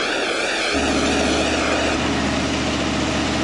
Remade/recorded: recorded